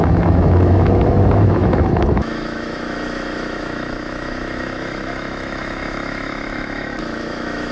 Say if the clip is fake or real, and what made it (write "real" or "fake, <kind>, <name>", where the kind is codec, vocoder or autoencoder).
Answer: fake, autoencoder, DAC-VAE